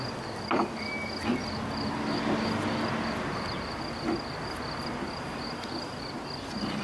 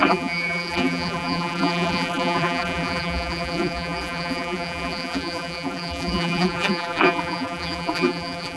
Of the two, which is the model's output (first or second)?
second